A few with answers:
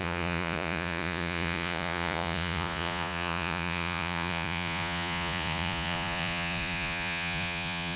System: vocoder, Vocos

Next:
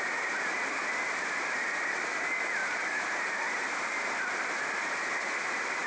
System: none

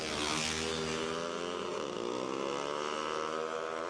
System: none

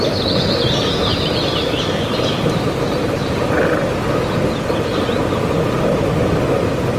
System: none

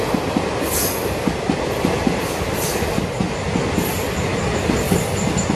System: none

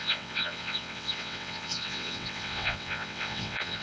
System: vocoder, WaveNeXt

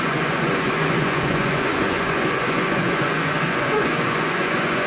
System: vocoder, Vocos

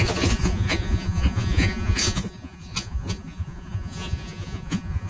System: vocoder, Vocos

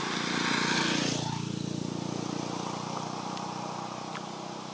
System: none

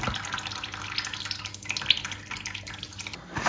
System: none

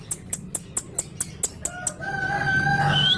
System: none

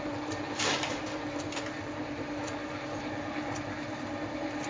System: vocoder, BigVGAN v2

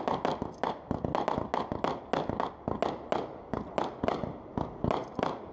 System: none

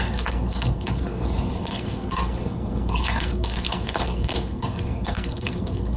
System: codec, SNAC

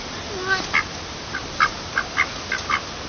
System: none